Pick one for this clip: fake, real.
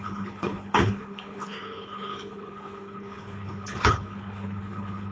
fake